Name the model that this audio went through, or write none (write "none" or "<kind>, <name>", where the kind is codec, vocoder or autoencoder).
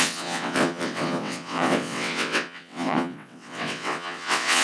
vocoder, WaveNeXt